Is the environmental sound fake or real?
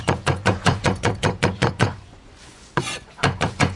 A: fake